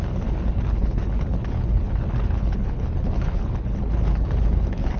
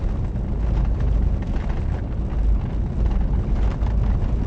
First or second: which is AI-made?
first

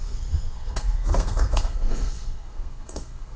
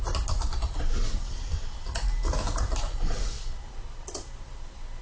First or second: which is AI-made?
first